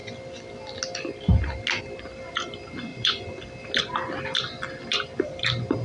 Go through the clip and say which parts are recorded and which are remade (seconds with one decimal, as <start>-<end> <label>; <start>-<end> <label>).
0.0-2.9 recorded; 2.9-3.4 remade; 3.4-5.8 recorded